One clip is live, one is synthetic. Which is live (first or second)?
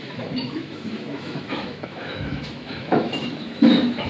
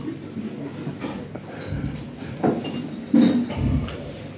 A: second